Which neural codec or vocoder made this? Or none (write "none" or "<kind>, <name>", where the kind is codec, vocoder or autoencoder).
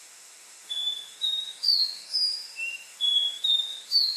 autoencoder, DAC-VAE